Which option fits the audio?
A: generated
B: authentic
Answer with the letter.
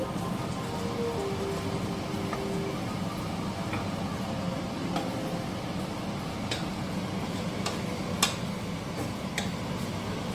B